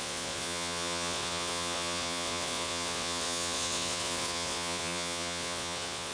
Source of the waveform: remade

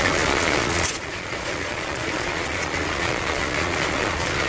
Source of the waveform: remade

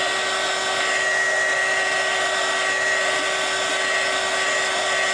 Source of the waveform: recorded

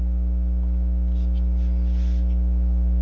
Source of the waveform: recorded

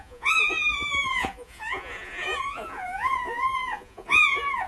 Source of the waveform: remade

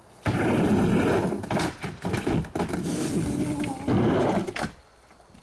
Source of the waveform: recorded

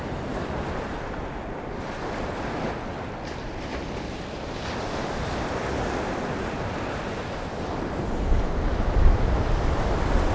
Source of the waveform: recorded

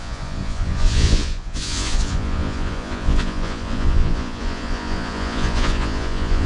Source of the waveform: remade